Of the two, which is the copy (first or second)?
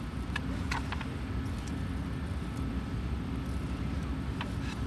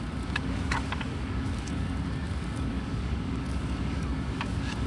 second